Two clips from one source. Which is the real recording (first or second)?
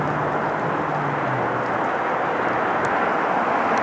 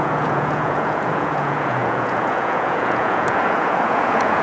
first